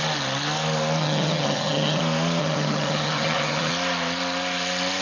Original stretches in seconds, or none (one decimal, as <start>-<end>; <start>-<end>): 0.0-1.0; 2.0-2.4; 3.7-5.0

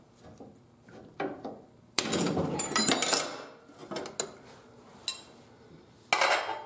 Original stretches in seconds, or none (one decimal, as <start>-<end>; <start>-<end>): 3.3-6.7

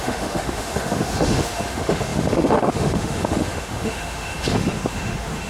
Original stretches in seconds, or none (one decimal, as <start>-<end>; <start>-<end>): none

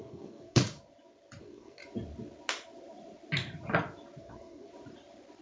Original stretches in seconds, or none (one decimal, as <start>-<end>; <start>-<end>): 0.6-1.4; 1.8-4.2; 4.7-5.4

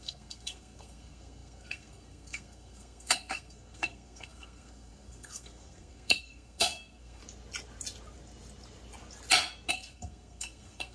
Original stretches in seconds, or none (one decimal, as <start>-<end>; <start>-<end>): 7.2-9.7

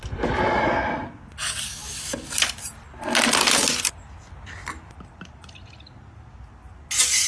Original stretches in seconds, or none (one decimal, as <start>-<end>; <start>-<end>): 0.0-7.3

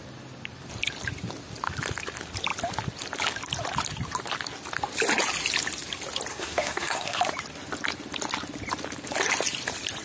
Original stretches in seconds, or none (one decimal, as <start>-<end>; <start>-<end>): 0.0-6.3; 7.2-10.0